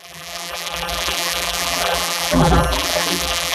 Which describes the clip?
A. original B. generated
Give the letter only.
B